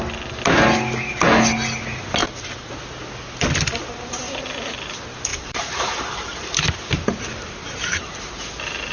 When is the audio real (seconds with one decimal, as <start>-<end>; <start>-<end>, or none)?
0.0-2.2; 2.7-5.3; 6.7-7.6; 8.3-8.9